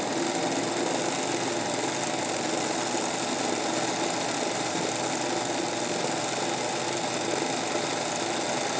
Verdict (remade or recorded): recorded